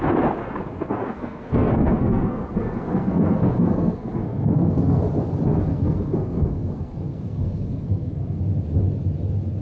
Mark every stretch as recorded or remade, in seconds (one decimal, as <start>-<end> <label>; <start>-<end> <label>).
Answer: 0.0-0.4 recorded; 0.4-5.0 remade; 5.0-5.7 recorded; 5.7-8.4 remade; 8.4-9.6 recorded